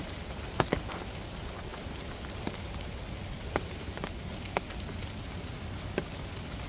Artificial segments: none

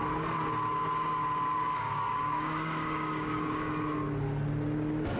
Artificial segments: 1.5-3.7 (codec, DAC)

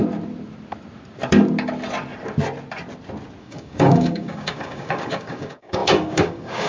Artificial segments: 3.4-6.7 (codec, DAC)

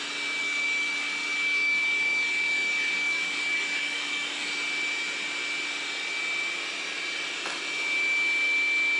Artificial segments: 0.4-4.5 (codec, DAC)

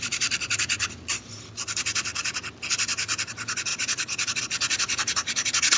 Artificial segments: none

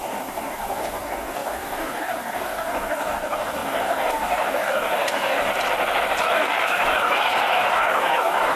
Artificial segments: 0.0-5.5 (codec, DAC); 6.2-8.6

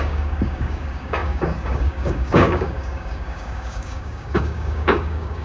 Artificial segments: 0.0-5.4 (codec, DAC)

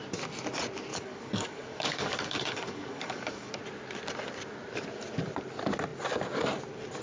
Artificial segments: 0.9-3.5 (codec, DAC)